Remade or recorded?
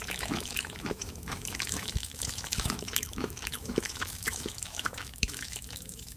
remade